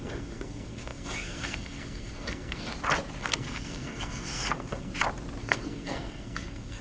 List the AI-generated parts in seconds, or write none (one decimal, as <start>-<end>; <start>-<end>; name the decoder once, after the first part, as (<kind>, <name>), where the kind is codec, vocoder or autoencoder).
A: 0.0-2.7 (codec, SNAC); 3.2-4.9; 5.4-6.8